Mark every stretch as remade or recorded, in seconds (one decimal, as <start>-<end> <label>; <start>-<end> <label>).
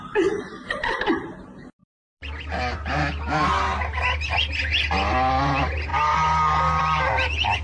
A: 0.0-7.6 recorded